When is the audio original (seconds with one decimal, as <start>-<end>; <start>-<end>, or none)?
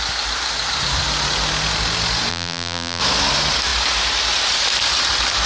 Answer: 0.0-2.3; 3.0-5.5